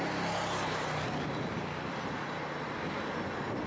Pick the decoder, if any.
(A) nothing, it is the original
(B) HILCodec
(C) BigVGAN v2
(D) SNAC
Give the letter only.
A